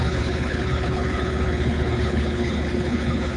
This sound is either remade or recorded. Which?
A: remade